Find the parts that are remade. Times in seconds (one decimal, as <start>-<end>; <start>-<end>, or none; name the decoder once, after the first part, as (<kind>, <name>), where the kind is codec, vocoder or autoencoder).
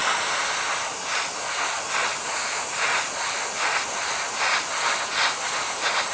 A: 2.2-2.9 (vocoder, Vocos)